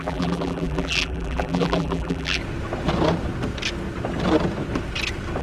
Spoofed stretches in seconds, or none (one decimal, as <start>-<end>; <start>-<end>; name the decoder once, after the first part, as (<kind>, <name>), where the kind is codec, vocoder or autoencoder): 0.0-2.4 (vocoder, BigVGAN v2)